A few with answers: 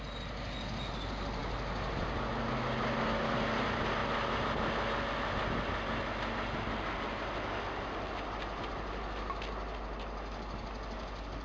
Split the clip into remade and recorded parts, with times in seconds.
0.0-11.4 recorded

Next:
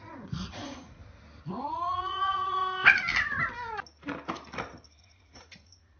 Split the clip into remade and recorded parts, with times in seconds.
0.0-1.0 remade; 1.0-1.5 recorded; 1.5-2.6 remade; 2.6-5.0 recorded; 5.0-6.0 remade